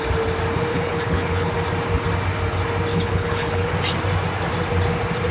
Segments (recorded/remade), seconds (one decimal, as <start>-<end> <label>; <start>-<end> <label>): 0.0-0.7 recorded; 0.7-1.5 remade; 1.5-2.9 recorded; 2.9-3.7 remade; 3.7-5.3 recorded